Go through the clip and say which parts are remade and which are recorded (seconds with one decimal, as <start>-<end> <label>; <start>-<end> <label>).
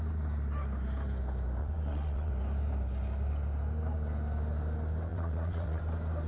0.0-1.6 recorded; 1.6-2.3 remade; 2.3-5.1 recorded; 5.1-5.8 remade; 5.8-6.3 recorded